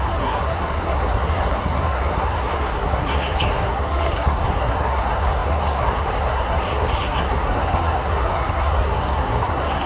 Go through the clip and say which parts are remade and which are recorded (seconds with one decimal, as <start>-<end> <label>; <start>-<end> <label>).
0.0-9.9 remade